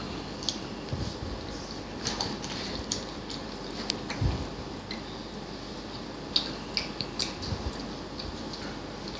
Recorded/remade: recorded